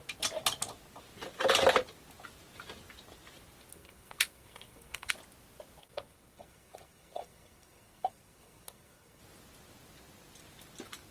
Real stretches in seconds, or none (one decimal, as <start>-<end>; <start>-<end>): 0.0-3.7; 5.1-5.8; 9.2-11.1